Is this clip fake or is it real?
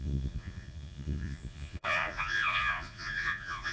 fake